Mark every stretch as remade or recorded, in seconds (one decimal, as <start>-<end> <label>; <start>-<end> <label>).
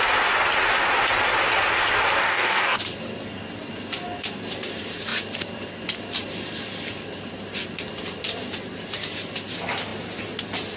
0.0-2.2 recorded; 2.2-2.8 remade; 2.8-10.8 recorded